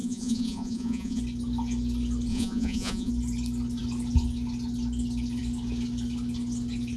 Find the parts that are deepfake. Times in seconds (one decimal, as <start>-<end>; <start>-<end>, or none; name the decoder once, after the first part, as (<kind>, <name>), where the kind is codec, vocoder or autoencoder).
0.0-1.2 (vocoder, Vocos); 2.3-3.1

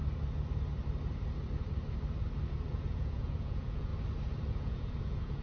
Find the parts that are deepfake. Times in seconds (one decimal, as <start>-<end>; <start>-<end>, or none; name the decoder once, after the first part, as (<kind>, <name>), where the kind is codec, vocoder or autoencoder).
2.7-3.9 (vocoder, Vocos); 4.5-5.4

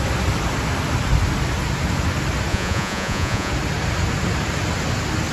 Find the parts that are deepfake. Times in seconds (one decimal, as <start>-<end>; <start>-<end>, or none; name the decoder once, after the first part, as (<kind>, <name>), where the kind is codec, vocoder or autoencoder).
2.5-3.5 (vocoder, Vocos)